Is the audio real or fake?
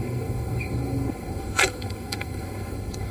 fake